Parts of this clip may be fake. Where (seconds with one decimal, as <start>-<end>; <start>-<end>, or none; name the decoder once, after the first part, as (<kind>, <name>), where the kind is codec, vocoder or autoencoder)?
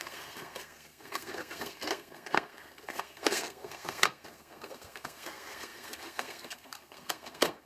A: 0.0-7.7 (codec, SNAC)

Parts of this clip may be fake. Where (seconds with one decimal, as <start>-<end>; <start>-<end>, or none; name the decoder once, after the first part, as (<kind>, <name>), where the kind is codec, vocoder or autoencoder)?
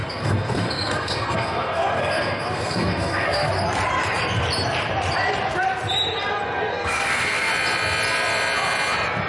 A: 0.0-3.5 (codec, SNAC); 6.3-7.5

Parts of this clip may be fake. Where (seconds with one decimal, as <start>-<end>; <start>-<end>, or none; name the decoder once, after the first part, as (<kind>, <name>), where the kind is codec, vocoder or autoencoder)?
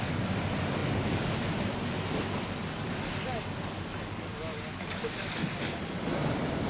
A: none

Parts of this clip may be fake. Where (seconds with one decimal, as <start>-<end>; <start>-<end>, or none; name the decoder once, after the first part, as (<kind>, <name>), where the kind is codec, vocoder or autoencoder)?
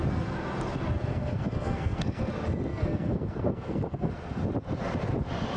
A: 1.1-2.3 (codec, SNAC); 2.7-4.1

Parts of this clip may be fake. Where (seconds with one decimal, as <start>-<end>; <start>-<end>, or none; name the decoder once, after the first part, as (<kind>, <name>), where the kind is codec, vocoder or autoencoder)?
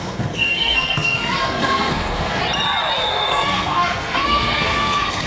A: 0.0-2.4 (codec, SNAC); 3.1-5.3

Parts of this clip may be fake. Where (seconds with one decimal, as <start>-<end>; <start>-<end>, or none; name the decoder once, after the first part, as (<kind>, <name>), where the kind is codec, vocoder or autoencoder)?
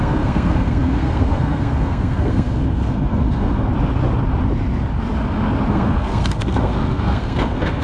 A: 0.0-3.7 (codec, SNAC); 5.7-7.8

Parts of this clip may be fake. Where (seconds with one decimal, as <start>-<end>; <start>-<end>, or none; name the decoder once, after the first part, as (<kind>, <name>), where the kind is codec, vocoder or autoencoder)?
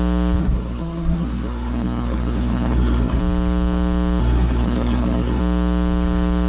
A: 0.4-3.2 (codec, SNAC); 4.2-5.4